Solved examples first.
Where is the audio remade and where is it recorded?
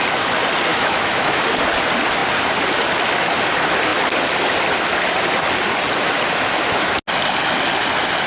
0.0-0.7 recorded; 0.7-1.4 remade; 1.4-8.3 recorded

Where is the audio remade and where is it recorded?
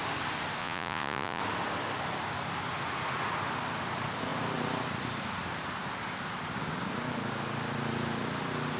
0.0-0.6 recorded; 0.6-1.4 remade; 1.4-8.8 recorded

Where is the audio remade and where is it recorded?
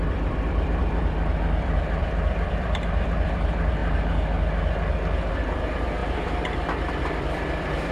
0.0-3.8 remade; 3.8-5.3 recorded; 5.3-7.9 remade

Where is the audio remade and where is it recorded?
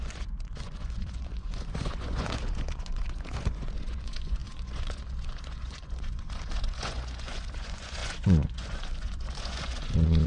0.0-10.3 remade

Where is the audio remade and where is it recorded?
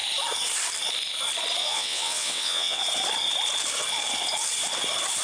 0.0-1.6 recorded; 1.6-2.8 remade; 2.8-5.2 recorded